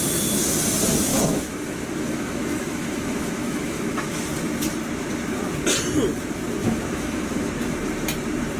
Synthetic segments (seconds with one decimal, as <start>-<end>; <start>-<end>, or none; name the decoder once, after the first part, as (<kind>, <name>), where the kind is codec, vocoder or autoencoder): 1.1-4.2 (autoencoder, DAC-VAE); 6.6-7.5